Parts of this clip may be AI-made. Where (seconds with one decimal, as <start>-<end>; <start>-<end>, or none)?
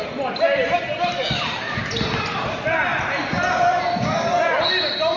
1.1-1.8